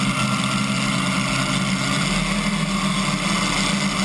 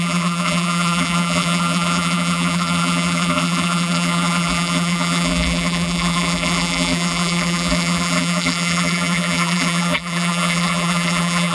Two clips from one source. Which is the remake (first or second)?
second